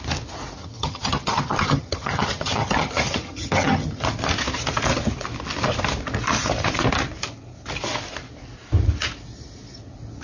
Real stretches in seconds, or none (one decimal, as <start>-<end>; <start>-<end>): 0.0-0.6; 4.0-10.2